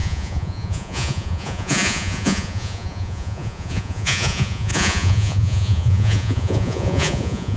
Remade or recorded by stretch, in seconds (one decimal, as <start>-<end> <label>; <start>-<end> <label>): 0.0-7.6 remade